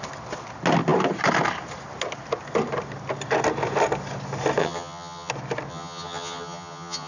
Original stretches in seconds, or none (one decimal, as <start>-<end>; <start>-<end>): 0.0-4.6; 5.3-5.7